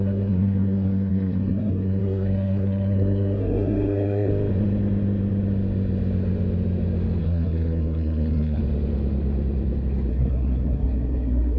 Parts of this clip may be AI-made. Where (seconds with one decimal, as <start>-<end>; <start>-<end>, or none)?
0.0-4.3; 7.2-8.6; 10.1-11.6